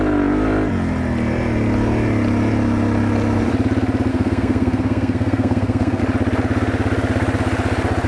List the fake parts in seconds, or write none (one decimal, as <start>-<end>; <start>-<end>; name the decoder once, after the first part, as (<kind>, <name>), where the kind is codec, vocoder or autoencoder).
4.1-6.0 (codec, SNAC)